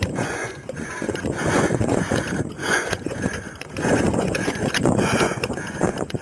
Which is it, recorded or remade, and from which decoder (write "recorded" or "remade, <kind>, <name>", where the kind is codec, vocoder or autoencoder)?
remade, vocoder, Vocos